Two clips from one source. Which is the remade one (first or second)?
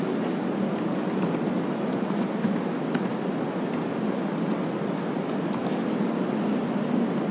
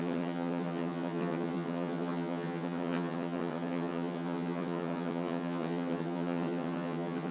second